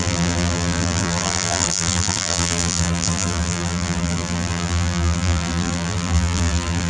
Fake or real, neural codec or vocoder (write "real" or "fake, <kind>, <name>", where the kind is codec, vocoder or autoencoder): fake, vocoder, BigVGAN v2